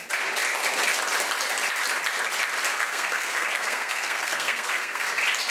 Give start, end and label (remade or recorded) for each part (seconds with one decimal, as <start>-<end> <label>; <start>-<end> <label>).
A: 0.0-2.7 recorded; 2.7-5.1 remade; 5.1-5.5 recorded